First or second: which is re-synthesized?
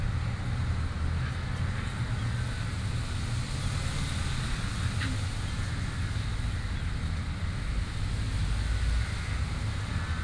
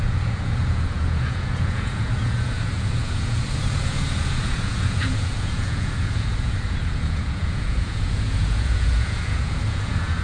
second